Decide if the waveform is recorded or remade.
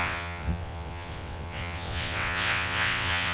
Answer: remade